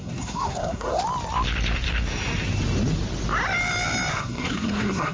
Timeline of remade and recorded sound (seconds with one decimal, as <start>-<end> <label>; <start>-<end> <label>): 0.0-1.0 remade; 1.0-4.1 recorded; 4.1-5.1 remade